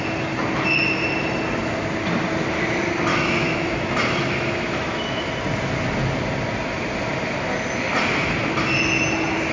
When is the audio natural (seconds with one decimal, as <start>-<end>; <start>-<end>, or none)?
0.0-3.1; 5.3-9.5